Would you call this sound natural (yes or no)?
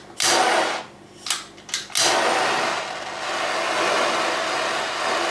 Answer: yes